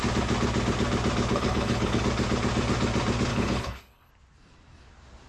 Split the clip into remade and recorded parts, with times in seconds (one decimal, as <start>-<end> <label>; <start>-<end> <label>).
0.0-1.3 recorded; 1.3-2.0 remade; 2.0-3.3 recorded; 3.3-4.1 remade; 4.1-5.3 recorded